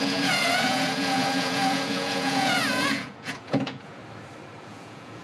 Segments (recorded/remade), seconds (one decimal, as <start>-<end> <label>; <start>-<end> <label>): 0.0-4.0 remade; 4.0-4.6 recorded; 4.6-5.2 remade